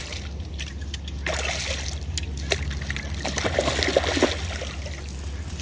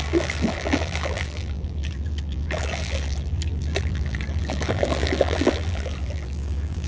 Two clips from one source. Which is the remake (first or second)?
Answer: second